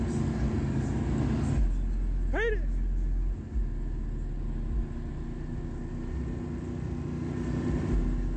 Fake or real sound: real